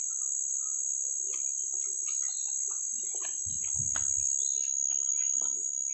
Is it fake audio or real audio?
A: real